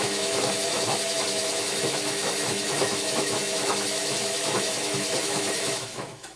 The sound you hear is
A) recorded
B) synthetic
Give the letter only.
B